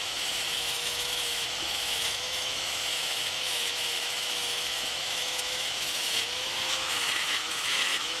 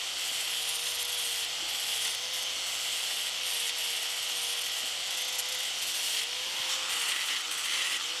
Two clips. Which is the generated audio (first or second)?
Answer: first